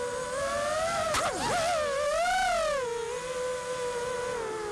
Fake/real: real